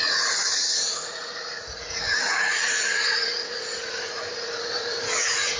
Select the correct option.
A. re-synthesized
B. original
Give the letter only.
A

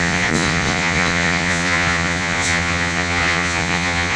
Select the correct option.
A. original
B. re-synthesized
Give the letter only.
B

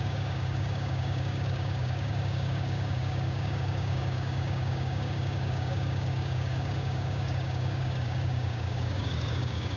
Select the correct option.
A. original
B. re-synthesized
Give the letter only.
B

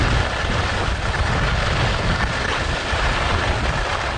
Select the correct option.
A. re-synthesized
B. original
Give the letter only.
B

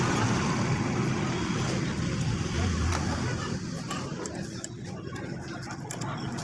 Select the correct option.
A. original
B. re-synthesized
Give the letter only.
A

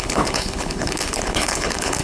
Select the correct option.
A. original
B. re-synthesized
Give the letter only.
B